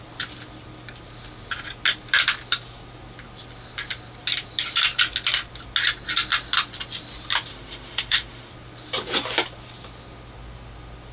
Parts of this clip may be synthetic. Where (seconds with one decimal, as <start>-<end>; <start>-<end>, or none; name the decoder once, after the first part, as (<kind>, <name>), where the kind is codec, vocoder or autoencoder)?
7.5-8.5 (autoencoder, DAC-VAE)

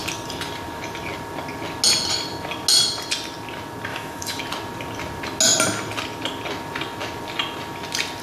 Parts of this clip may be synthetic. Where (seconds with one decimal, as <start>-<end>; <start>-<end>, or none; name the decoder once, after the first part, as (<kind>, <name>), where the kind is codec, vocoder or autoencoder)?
3.9-4.4 (autoencoder, DAC-VAE)

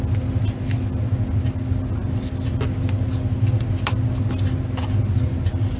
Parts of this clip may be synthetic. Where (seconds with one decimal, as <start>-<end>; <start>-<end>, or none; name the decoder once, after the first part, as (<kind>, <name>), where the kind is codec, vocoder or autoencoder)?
none

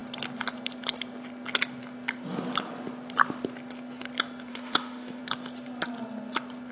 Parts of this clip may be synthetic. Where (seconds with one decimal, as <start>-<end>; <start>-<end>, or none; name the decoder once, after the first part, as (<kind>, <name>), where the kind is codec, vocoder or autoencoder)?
4.5-5.2 (autoencoder, DAC-VAE)

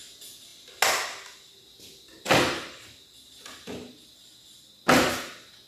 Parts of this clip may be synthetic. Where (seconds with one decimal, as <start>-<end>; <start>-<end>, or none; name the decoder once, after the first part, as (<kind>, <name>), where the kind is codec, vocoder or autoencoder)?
none

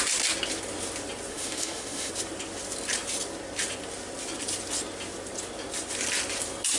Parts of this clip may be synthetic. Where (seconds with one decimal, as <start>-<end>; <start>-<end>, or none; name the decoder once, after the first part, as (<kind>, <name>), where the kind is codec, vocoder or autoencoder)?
1.3-2.1 (autoencoder, DAC-VAE)

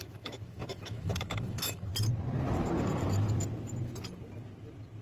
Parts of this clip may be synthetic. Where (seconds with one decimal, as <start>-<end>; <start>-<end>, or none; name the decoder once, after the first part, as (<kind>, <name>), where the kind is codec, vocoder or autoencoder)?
0.0-1.9 (autoencoder, DAC-VAE)